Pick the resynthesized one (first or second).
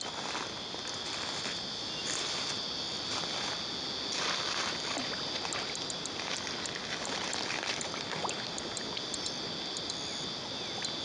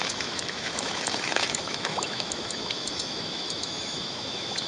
second